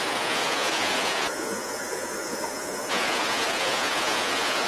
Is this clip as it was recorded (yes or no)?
no